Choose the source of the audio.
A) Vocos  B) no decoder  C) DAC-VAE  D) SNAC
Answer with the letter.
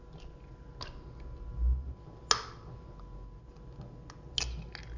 B